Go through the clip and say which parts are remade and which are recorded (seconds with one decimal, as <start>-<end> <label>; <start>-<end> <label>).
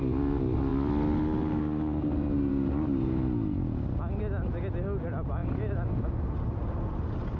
0.0-7.4 recorded